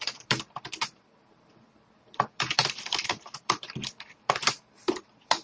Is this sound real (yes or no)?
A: no